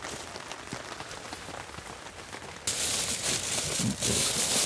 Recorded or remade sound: recorded